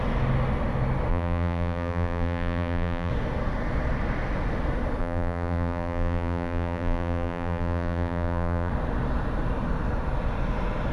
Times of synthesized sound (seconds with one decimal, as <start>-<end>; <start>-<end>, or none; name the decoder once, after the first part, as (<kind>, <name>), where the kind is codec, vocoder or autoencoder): 1.1-3.1 (vocoder, BigVGAN v2); 5.0-8.7